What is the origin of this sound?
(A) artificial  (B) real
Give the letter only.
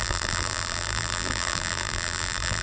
A